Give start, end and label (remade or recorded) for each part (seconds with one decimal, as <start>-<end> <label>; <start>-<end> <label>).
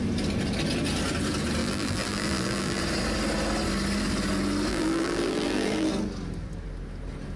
0.0-1.6 recorded; 1.6-2.8 remade; 2.8-4.7 recorded; 4.7-5.9 remade; 5.9-7.4 recorded